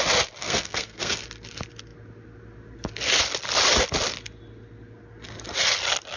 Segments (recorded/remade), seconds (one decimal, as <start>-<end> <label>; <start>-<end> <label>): 0.0-0.4 recorded; 0.4-1.2 remade; 1.2-6.2 recorded